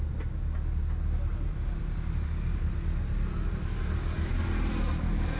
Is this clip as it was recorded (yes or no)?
yes